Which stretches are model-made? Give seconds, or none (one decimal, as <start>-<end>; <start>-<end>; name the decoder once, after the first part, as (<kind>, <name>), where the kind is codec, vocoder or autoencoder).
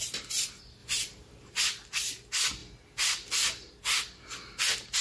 0.8-1.6 (vocoder, BigVGAN v2)